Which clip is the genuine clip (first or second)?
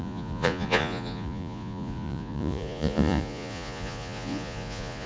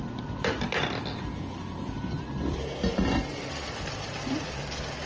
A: second